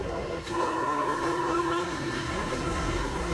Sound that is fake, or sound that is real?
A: fake